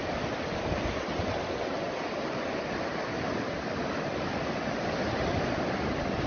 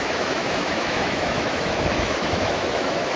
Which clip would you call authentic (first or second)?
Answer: first